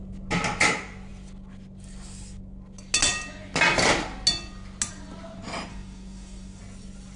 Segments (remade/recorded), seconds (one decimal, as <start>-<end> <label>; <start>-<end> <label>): 0.0-5.7 recorded; 5.7-6.6 remade; 6.6-7.2 recorded